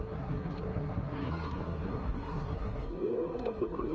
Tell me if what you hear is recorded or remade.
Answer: remade